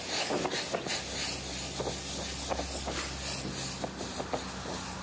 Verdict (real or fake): real